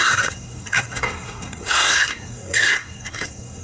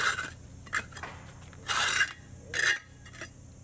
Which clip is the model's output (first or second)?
first